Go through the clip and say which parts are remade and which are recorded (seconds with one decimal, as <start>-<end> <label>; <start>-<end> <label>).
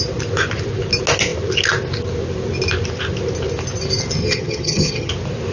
0.0-4.2 recorded; 4.2-5.1 remade; 5.1-5.5 recorded